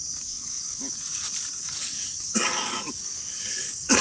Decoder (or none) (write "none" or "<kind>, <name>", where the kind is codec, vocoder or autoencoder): codec, DAC